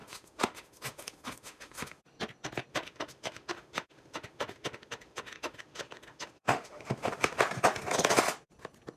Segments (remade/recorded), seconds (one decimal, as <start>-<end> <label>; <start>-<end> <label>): 0.0-2.0 remade; 2.0-2.7 recorded; 2.7-7.4 remade; 7.4-9.0 recorded